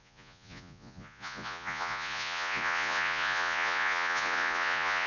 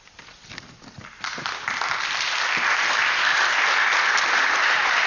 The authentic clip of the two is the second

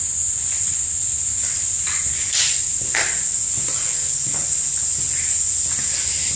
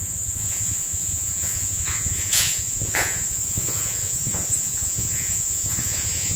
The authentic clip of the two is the first